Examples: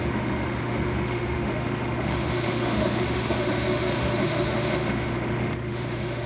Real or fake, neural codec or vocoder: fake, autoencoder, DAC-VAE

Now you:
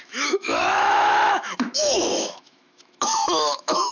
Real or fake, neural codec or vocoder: fake, autoencoder, DAC-VAE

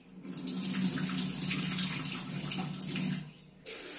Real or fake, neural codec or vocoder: real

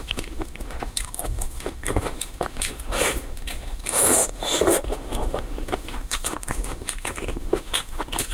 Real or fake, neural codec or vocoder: fake, autoencoder, DAC-VAE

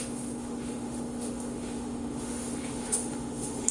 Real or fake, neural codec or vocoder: fake, autoencoder, DAC-VAE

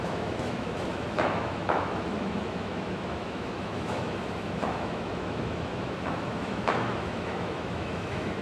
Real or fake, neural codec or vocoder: fake, autoencoder, DAC-VAE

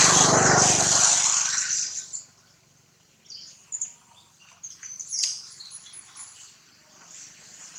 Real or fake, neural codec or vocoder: real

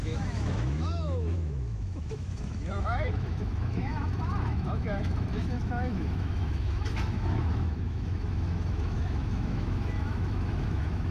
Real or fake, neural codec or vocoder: fake, autoencoder, DAC-VAE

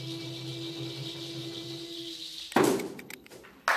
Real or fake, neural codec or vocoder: real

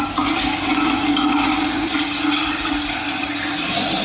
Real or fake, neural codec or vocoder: real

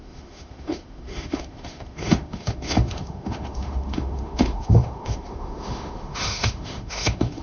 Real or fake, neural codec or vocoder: fake, autoencoder, DAC-VAE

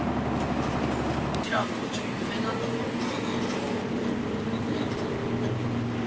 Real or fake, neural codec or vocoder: real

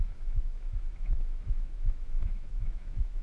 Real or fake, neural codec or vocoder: fake, autoencoder, DAC-VAE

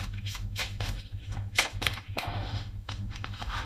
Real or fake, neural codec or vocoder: fake, autoencoder, DAC-VAE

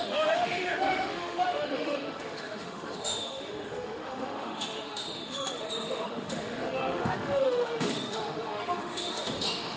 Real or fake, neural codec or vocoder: fake, autoencoder, DAC-VAE